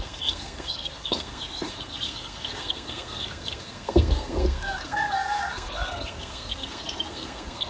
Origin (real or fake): fake